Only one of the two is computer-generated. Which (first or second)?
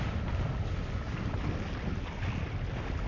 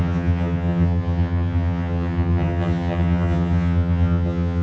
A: second